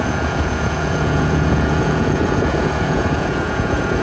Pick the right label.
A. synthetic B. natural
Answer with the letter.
A